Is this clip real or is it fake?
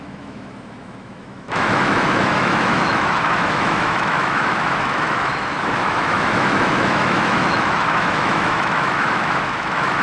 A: fake